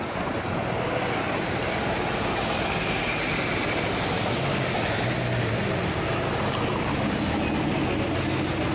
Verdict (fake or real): real